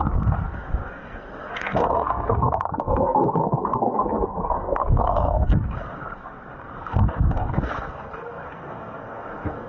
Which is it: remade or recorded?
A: remade